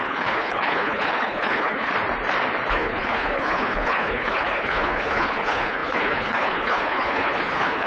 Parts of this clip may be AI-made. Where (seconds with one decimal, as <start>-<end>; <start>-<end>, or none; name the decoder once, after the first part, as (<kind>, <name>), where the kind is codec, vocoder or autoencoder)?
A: 0.0-1.9 (codec, HILCodec); 2.7-7.9